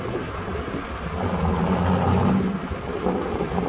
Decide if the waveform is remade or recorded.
recorded